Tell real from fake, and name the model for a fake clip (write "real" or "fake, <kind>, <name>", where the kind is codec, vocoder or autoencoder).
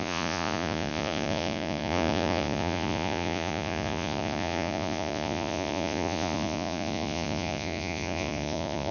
fake, vocoder, Vocos